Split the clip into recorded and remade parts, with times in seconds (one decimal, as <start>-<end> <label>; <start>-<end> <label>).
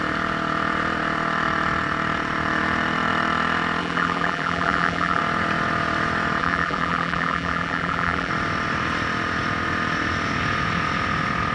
0.0-3.8 recorded; 3.8-5.2 remade; 5.2-6.4 recorded; 6.4-8.3 remade; 8.3-11.5 recorded